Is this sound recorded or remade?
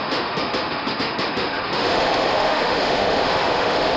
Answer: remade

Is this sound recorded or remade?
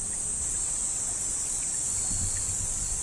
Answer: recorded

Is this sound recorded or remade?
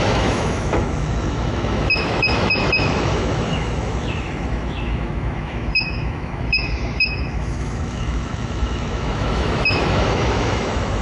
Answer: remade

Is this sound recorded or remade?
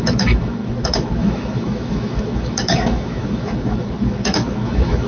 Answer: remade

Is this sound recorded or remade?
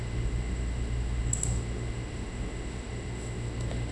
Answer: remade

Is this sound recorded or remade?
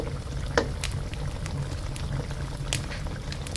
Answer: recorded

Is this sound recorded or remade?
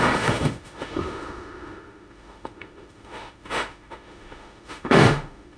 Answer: remade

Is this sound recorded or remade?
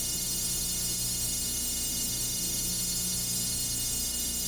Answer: remade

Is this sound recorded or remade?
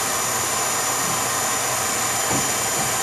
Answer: recorded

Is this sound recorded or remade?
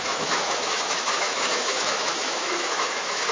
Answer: remade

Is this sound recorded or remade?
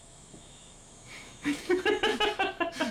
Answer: remade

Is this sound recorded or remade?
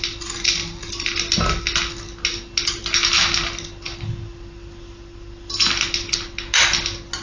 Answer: recorded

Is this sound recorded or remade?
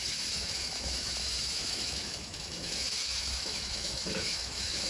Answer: remade